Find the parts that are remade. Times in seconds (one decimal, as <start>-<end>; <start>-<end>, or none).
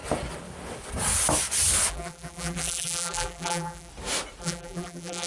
1.9-3.9; 4.4-5.3